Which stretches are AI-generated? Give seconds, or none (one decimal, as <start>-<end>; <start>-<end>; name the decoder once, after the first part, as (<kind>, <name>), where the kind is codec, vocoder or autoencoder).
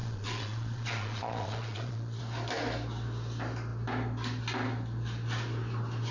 0.0-2.2 (vocoder, Vocos)